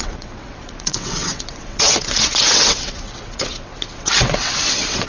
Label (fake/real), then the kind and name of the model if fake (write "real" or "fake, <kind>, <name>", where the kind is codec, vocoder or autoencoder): fake, vocoder, WaveNeXt